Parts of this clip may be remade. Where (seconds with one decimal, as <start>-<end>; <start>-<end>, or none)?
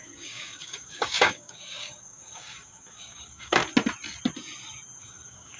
0.0-3.6; 5.0-5.6